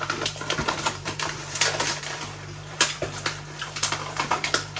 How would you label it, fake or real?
fake